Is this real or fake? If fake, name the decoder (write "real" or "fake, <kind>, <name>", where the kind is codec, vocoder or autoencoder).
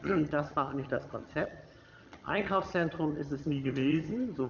fake, vocoder, HiFi-GAN